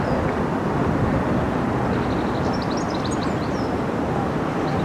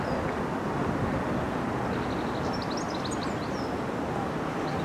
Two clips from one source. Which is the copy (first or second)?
first